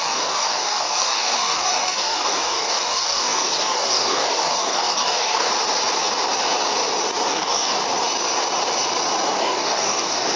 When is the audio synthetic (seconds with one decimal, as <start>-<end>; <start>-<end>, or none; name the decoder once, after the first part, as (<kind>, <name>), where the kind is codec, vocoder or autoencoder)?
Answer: 0.0-5.5 (codec, DAC); 7.3-7.8; 9.4-10.4